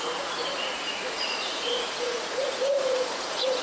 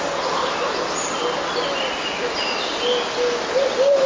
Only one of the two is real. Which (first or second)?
second